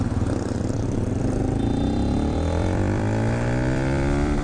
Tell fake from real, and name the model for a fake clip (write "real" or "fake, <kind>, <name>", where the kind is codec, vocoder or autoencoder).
fake, vocoder, BigVGAN v2